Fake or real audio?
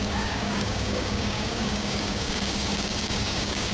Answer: fake